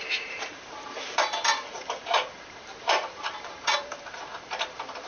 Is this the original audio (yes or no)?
no